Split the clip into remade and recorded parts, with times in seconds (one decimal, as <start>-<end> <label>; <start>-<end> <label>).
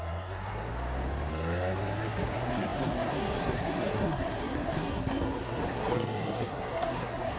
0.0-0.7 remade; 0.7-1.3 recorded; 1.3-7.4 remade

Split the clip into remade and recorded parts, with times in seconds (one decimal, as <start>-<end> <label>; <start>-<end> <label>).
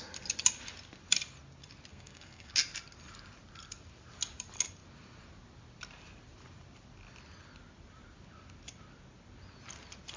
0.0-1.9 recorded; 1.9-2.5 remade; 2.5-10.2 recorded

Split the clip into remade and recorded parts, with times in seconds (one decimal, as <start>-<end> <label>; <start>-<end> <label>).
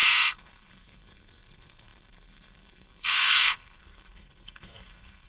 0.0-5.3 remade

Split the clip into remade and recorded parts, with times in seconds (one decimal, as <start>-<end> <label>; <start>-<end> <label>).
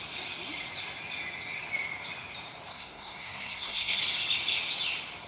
0.0-2.7 recorded; 2.7-4.0 remade; 4.0-5.3 recorded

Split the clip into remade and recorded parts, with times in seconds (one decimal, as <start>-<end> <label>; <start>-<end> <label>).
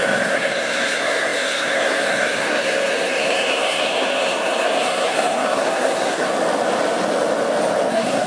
0.0-6.3 remade; 6.3-7.9 recorded; 7.9-8.3 remade